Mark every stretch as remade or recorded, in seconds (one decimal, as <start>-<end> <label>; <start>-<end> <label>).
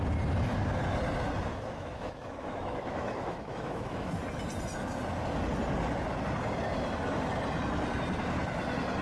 0.0-1.5 recorded; 1.5-4.1 remade; 4.1-9.0 recorded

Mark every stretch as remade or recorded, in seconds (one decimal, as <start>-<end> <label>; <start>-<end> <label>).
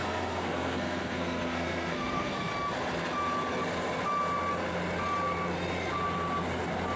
0.0-2.5 remade; 2.5-7.0 recorded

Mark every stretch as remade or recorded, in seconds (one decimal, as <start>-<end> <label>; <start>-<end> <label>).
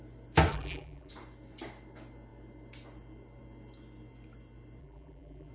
0.0-0.5 recorded; 0.5-1.1 remade; 1.1-4.8 recorded; 4.8-5.5 remade